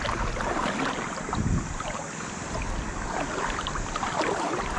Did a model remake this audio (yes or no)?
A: no